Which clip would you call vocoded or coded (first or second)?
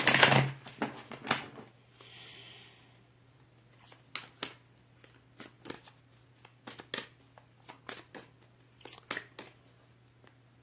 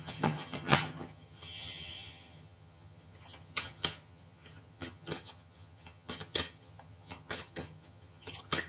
second